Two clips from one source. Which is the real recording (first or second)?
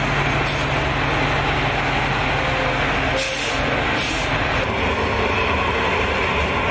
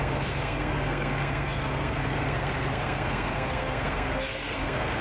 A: first